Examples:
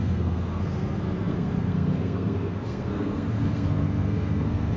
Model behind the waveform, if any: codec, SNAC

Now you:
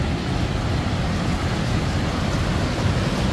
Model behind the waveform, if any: none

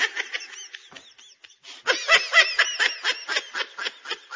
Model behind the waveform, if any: none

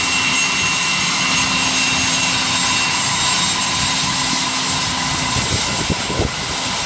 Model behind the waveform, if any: none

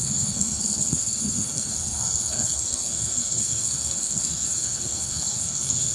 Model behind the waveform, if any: codec, SNAC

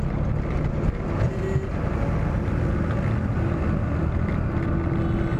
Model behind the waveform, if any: none